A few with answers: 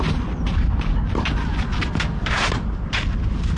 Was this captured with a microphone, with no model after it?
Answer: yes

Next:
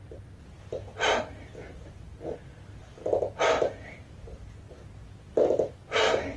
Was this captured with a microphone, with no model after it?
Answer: yes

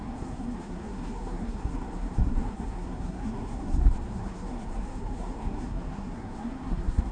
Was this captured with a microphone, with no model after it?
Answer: no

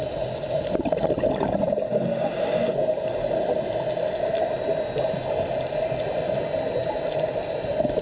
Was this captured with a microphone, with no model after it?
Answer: yes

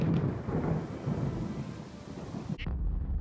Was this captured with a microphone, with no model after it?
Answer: yes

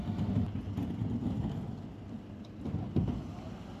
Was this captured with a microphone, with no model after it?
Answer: yes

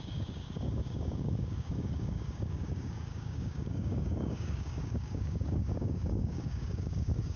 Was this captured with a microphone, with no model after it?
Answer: no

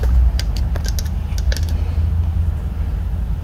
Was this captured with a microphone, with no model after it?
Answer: yes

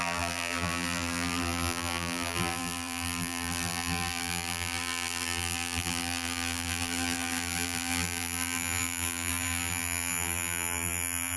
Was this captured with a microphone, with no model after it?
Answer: no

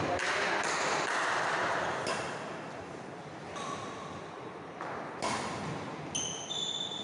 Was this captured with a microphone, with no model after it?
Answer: yes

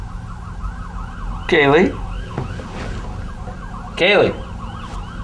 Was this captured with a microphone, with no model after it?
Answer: yes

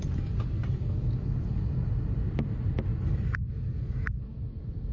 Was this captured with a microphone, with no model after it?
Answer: yes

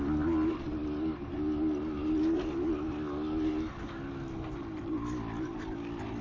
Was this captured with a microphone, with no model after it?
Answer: yes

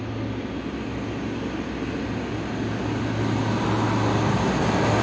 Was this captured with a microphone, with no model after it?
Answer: yes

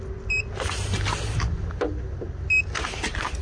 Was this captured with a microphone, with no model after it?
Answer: yes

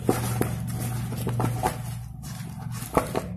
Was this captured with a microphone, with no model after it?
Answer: yes